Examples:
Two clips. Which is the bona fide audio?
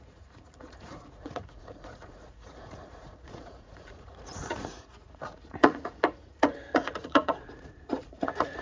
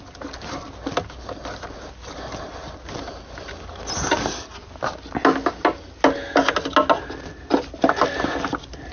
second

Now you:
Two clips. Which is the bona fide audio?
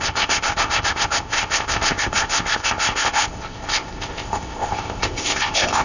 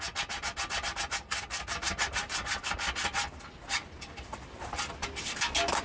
second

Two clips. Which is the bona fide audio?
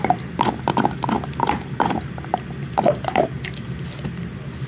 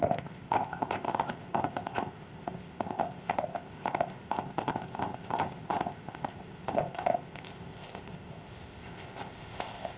first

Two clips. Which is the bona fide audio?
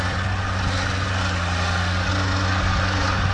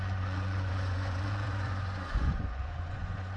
first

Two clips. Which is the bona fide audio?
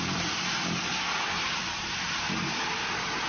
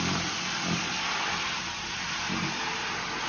second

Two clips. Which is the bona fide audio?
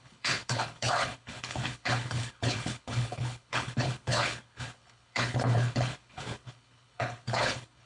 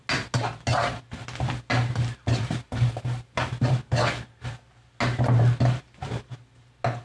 second